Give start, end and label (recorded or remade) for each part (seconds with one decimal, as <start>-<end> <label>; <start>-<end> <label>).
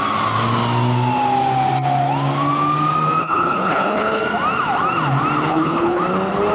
0.0-3.2 recorded; 3.2-4.2 remade; 4.2-5.5 recorded; 5.5-6.0 remade; 6.0-6.5 recorded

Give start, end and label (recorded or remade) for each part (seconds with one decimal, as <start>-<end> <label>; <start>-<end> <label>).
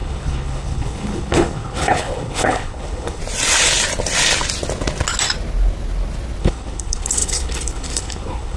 0.0-3.2 remade; 3.2-6.4 recorded; 6.4-8.6 remade